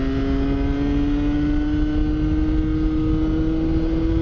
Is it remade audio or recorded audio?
recorded